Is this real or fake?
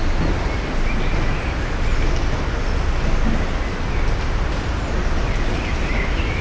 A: real